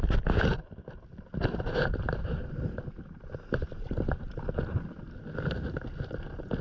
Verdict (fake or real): real